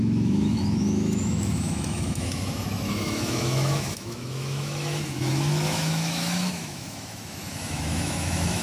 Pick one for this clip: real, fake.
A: fake